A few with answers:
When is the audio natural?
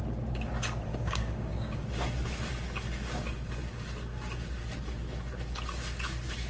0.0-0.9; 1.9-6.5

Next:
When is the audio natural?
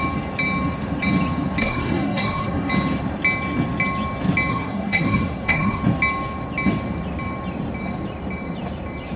0.0-1.6; 2.7-4.5; 5.8-9.2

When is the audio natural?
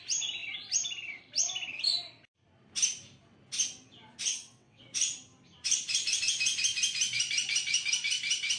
0.0-4.3; 4.8-8.6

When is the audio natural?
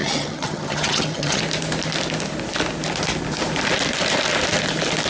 1.4-5.1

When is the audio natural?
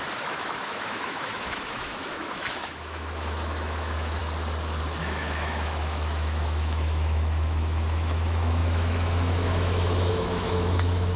4.2-5.0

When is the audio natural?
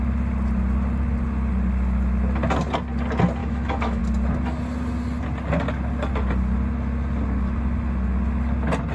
0.0-3.4; 4.0-8.9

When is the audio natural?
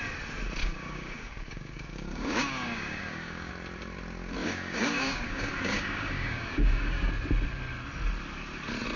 0.0-0.6; 3.5-4.4; 7.1-9.0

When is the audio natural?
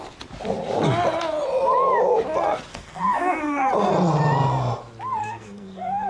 0.0-2.7; 3.7-5.2